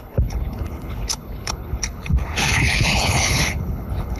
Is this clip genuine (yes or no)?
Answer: no